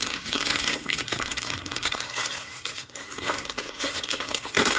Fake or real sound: fake